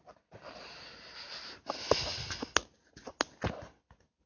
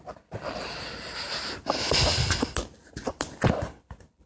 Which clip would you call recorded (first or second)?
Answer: first